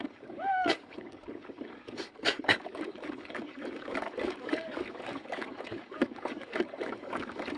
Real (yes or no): no